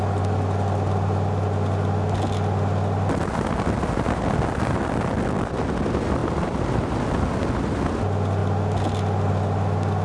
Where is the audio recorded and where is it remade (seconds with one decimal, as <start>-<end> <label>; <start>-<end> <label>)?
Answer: 0.0-10.0 recorded